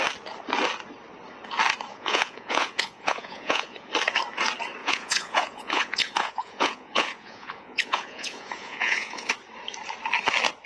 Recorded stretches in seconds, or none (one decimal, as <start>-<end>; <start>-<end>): 0.0-1.9; 3.9-4.8; 9.3-10.7